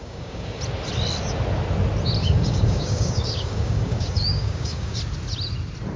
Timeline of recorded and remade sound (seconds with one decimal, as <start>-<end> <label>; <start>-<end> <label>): 0.0-0.6 remade; 0.6-2.2 recorded; 2.2-5.0 remade; 5.0-6.0 recorded